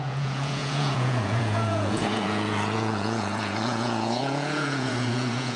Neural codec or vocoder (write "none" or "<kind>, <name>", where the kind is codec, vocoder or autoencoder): vocoder, Vocos